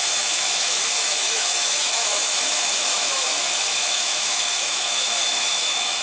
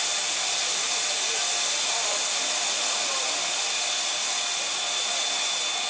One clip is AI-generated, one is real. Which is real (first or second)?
second